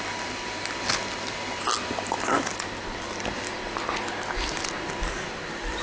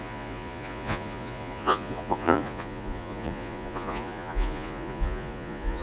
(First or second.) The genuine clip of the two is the first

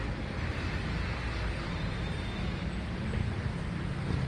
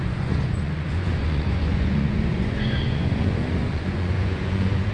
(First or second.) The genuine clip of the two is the first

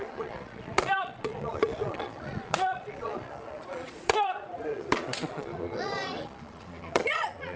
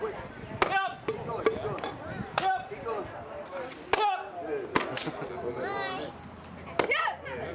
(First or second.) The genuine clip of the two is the second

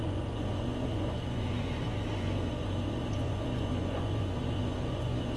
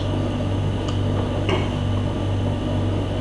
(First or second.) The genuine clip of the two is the second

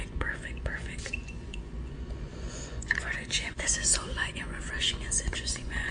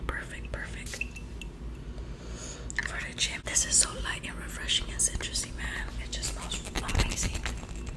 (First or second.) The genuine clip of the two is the second